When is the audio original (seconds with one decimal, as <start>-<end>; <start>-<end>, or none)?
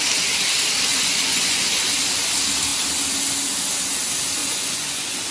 0.0-0.9; 1.6-4.4